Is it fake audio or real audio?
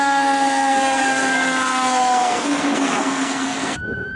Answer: fake